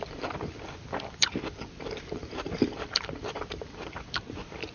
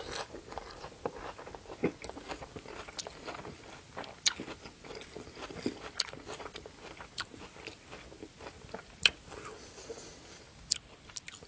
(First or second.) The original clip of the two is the second